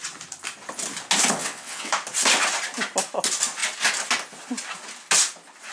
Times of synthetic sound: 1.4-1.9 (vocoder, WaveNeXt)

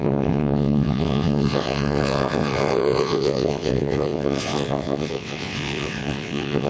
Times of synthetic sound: 0.0-6.7 (vocoder, WaveNeXt)

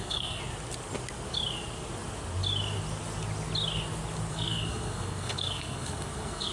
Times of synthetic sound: 0.0-0.4 (codec, SNAC); 4.3-6.5

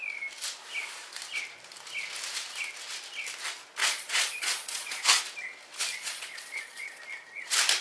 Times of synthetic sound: 3.8-5.2 (vocoder, Vocos); 5.9-7.0

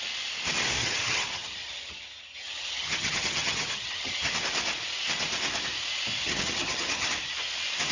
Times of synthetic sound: 0.8-4.3 (vocoder, HiFi-GAN); 6.2-7.1

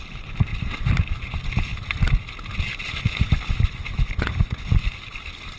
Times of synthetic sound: none

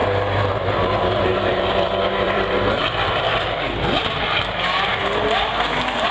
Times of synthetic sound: 1.3-3.3 (vocoder, BigVGAN v2)

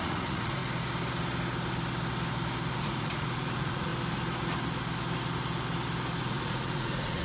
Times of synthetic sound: 0.0-0.6 (vocoder, Vocos); 2.8-3.9; 6.2-7.2